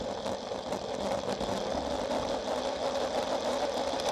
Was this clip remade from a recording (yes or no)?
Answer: no